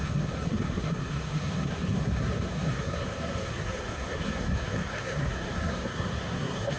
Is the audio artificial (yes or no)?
yes